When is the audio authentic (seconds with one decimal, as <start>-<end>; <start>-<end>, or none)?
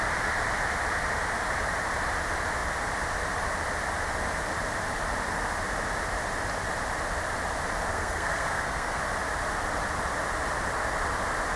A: 0.0-7.9; 9.0-11.6